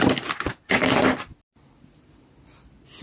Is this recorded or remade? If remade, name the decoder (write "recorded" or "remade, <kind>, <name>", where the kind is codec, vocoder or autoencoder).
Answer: recorded